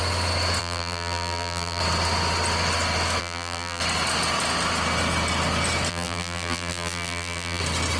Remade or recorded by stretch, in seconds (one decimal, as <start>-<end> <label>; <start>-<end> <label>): 0.0-0.6 recorded; 0.6-1.8 remade; 1.8-3.2 recorded; 3.2-3.8 remade; 3.8-5.9 recorded; 5.9-7.6 remade; 7.6-8.0 recorded